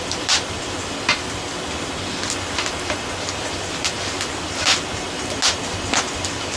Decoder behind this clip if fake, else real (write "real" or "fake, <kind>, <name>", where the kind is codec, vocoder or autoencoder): real